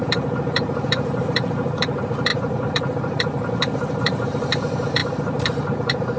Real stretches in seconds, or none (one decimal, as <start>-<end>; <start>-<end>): none